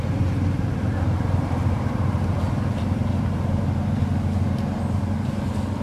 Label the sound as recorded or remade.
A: recorded